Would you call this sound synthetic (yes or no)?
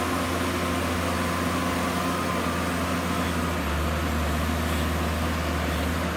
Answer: no